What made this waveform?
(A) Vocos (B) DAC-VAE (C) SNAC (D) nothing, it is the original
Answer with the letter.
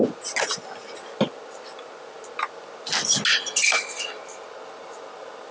D